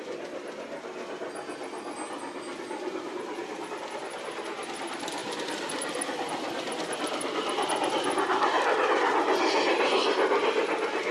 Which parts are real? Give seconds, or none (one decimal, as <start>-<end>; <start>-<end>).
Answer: 0.0-11.1